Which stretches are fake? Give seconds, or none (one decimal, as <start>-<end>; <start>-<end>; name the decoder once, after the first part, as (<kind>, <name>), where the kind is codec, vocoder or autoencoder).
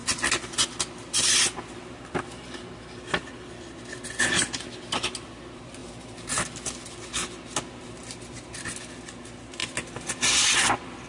none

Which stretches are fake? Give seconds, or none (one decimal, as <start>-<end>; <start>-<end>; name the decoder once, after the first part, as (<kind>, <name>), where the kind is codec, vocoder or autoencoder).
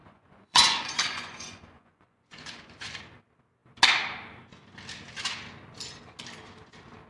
0.0-3.0 (vocoder, Vocos)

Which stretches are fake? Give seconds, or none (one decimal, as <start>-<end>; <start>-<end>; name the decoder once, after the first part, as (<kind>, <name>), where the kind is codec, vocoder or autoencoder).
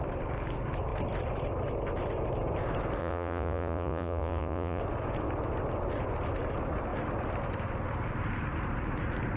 3.0-4.8 (vocoder, Vocos)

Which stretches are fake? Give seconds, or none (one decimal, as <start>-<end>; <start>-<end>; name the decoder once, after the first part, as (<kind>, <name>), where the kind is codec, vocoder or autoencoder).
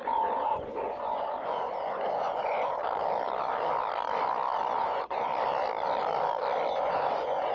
0.0-2.8 (vocoder, Vocos); 4.8-5.3; 6.7-7.5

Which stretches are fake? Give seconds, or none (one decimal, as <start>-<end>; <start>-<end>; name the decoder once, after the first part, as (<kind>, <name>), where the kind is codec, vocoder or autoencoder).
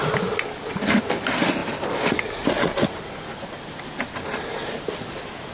none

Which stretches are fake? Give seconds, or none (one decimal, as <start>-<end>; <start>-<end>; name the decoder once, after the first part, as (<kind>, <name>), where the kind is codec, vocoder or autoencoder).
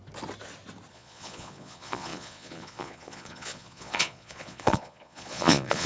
0.9-5.9 (vocoder, Vocos)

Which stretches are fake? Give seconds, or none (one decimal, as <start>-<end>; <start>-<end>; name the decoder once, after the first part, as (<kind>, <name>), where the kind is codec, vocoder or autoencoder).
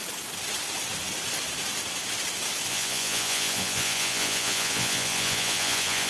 2.7-6.1 (vocoder, Vocos)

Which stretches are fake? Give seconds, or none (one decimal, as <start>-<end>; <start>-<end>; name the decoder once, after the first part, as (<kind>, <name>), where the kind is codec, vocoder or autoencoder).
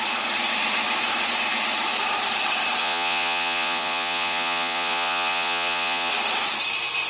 2.8-6.1 (vocoder, Vocos)